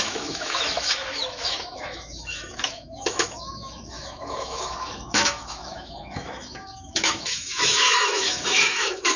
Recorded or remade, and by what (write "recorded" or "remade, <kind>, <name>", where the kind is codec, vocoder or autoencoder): remade, autoencoder, DAC-VAE